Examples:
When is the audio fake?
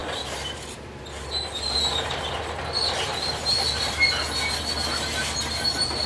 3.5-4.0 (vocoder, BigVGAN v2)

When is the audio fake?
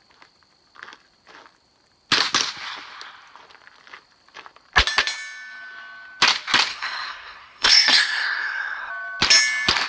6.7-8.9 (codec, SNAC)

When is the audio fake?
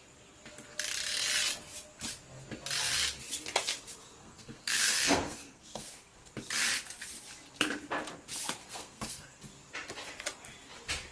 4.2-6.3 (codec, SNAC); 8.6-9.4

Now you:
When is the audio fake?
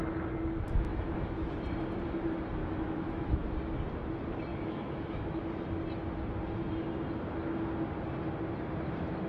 0.9-1.5 (autoencoder, DAC-VAE); 2.6-3.5; 4.5-5.4